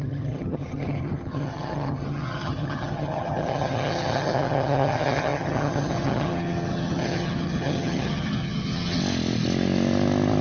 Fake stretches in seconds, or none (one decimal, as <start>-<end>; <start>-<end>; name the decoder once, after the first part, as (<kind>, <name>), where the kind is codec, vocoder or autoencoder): 0.0-9.0 (vocoder, HiFi-GAN)